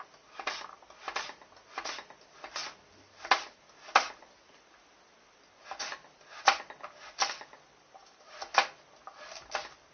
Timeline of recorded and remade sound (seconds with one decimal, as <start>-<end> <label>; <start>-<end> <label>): 0.0-9.9 recorded